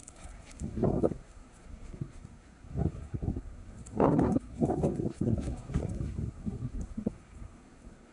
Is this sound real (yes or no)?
no